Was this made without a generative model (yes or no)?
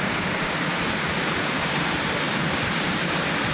no